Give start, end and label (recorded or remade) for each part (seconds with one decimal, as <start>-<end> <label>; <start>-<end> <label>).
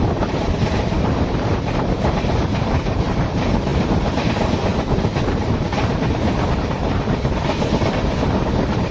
0.0-8.9 remade